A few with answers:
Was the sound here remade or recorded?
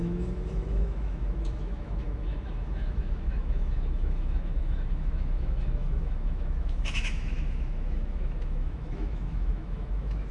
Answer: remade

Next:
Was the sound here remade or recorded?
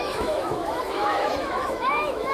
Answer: remade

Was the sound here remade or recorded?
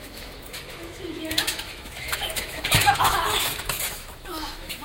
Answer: remade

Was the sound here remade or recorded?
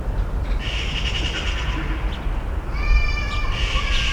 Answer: recorded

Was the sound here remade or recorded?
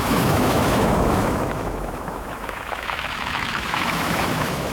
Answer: remade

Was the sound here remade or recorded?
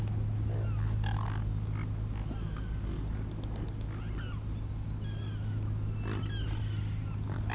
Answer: recorded